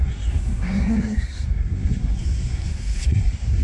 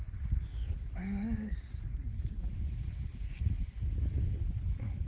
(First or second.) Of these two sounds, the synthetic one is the first